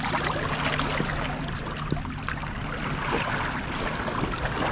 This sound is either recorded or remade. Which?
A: recorded